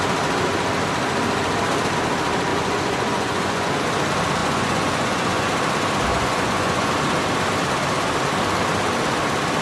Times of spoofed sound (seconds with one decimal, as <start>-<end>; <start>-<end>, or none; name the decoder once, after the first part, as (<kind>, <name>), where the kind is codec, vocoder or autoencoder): 2.5-3.7 (vocoder, Vocos); 4.4-5.5; 6.1-6.9